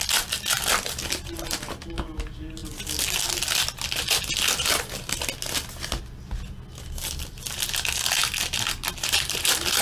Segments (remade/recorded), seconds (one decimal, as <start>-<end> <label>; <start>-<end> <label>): 0.0-9.8 recorded